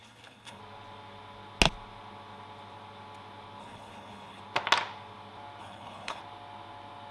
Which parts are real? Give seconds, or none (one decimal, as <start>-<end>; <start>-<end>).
0.6-3.6; 4.4-5.6; 6.2-7.1